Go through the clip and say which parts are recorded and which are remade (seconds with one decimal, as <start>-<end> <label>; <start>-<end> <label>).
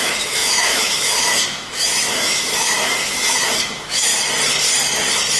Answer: 0.0-4.1 remade; 4.1-5.4 recorded